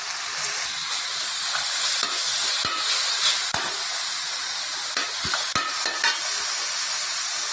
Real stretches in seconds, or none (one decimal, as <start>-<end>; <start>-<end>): 0.0-7.5